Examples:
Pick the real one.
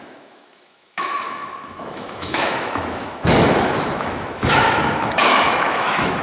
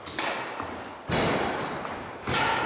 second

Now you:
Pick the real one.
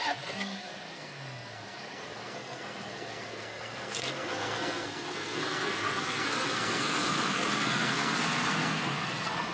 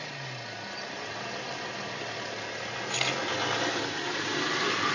second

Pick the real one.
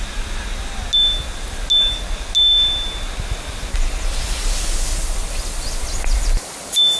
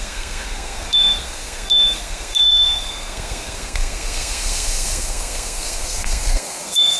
first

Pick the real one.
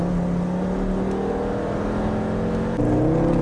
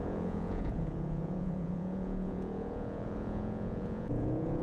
first